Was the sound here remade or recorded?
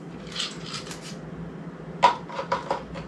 recorded